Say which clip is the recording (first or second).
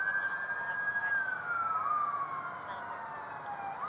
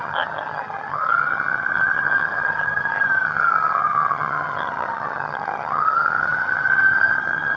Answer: first